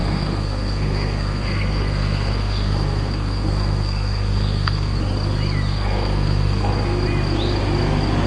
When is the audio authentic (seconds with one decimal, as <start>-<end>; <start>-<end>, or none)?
5.0-5.7; 6.7-8.3